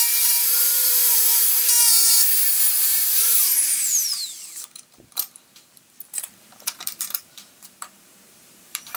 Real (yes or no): no